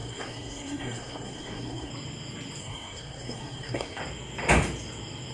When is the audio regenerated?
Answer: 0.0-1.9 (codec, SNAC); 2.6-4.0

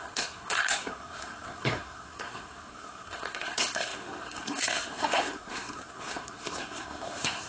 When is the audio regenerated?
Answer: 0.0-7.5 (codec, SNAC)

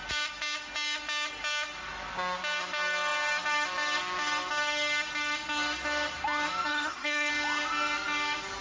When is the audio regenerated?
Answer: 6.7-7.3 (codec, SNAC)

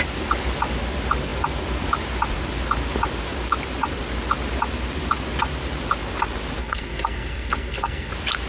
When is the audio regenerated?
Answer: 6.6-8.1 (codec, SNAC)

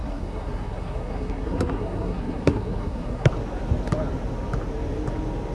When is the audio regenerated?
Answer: 0.0-3.3 (codec, SNAC)

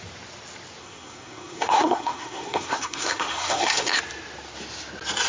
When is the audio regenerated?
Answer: 0.8-4.0 (codec, SNAC)

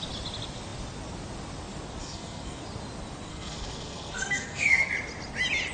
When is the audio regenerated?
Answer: 2.0-2.6 (codec, SNAC); 3.3-4.9